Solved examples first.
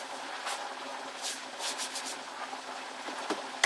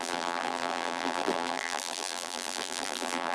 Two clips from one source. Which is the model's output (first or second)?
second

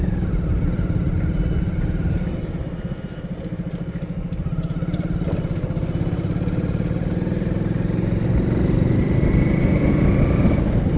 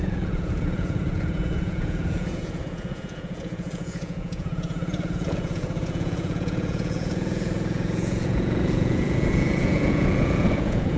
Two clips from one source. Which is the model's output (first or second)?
second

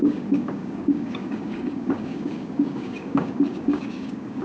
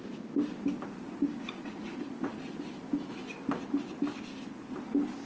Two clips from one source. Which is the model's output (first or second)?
first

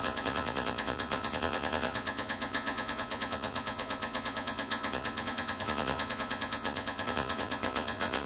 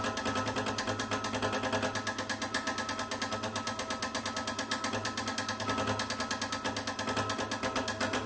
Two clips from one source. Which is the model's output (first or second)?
first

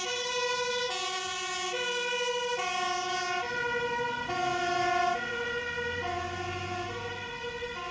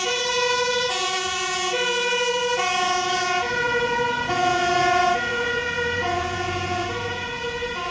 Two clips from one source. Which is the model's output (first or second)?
second